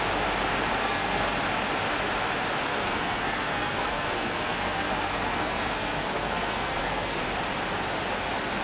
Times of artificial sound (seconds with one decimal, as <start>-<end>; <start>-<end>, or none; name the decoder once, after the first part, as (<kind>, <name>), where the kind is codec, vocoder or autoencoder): 0.8-1.4 (codec, SNAC); 2.7-7.2